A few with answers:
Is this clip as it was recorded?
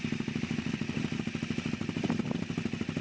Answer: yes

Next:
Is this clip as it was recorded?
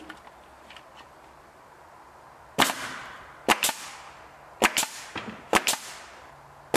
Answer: yes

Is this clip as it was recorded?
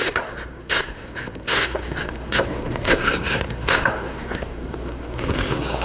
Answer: no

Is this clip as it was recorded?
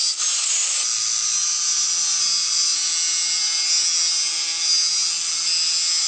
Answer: yes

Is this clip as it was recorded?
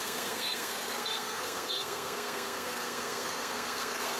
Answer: no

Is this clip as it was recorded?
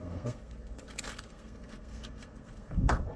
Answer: no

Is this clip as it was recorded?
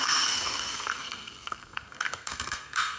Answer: no